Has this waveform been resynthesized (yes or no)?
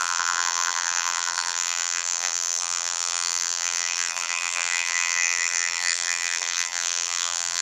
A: yes